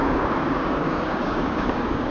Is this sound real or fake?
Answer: fake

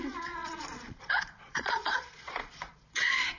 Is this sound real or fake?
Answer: fake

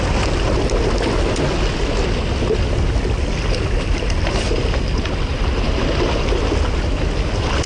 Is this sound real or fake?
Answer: real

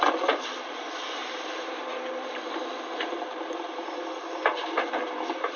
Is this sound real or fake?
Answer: fake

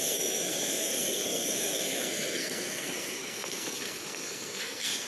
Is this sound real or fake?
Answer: fake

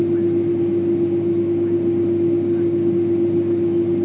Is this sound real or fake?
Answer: real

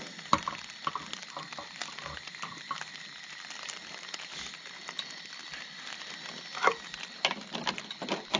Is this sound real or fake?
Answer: real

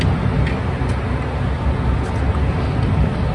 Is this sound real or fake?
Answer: real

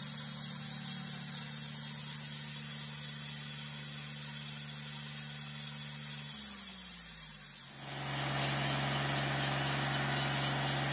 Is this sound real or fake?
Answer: real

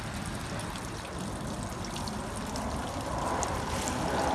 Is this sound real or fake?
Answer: real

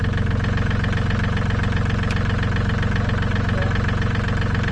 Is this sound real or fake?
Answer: real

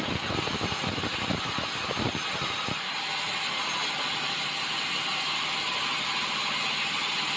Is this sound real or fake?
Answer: real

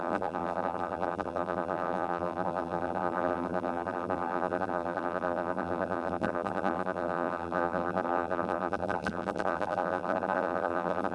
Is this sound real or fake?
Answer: fake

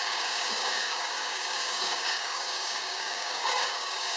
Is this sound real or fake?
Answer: fake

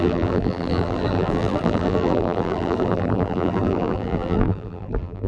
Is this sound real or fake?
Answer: fake